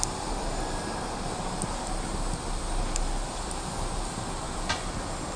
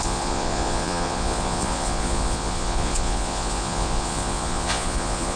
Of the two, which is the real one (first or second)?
first